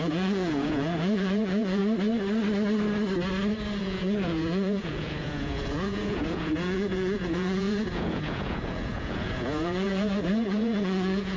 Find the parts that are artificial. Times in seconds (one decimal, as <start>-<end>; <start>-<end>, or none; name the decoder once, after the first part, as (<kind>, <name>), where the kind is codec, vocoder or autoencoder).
0.0-1.8 (vocoder, Vocos); 3.8-11.4